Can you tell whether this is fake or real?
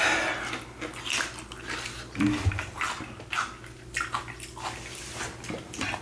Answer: real